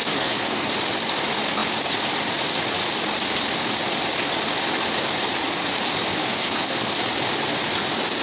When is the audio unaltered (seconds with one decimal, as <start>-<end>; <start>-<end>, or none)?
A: 0.7-6.2; 6.9-8.2